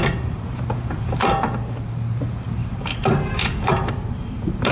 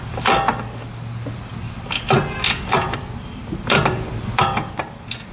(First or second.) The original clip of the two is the second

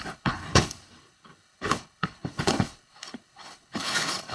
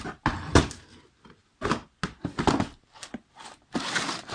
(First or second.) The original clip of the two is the second